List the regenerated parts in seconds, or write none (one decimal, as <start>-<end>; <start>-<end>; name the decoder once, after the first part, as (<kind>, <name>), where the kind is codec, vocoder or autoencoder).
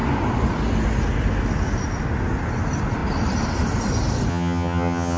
4.3-5.2 (vocoder, HiFi-GAN)